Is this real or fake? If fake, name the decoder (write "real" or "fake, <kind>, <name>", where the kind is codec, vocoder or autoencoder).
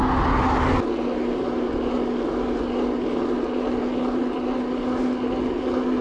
real